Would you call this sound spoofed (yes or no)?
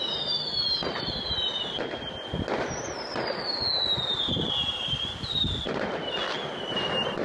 no